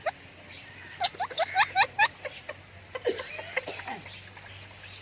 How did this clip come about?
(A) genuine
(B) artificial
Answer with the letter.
A